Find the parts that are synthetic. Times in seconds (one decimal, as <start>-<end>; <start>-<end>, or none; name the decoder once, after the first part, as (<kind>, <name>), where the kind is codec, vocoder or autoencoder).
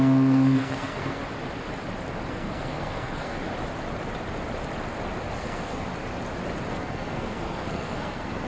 0.0-1.2 (codec, SNAC); 2.3-3.4; 5.4-5.9; 6.7-8.5